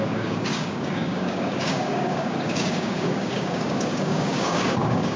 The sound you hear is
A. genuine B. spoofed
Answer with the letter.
B